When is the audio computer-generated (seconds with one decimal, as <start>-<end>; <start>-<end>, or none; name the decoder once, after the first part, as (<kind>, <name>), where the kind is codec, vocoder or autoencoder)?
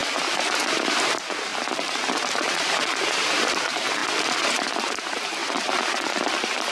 0.6-6.7 (vocoder, BigVGAN v2)